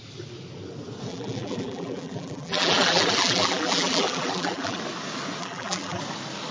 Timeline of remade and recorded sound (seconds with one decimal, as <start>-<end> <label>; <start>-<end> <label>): 0.0-1.1 recorded; 1.1-4.8 remade; 4.8-5.4 recorded; 5.4-6.0 remade; 6.0-6.5 recorded